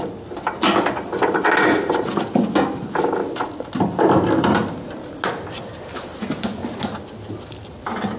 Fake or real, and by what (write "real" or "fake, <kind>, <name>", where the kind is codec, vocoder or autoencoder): real